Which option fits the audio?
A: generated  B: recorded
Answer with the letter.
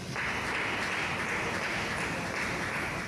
B